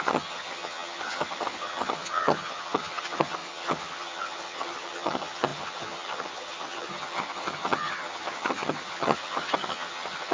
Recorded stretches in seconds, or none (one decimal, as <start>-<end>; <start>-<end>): none